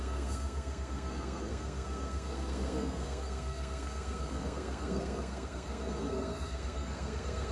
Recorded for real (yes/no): no